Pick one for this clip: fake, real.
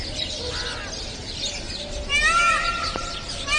real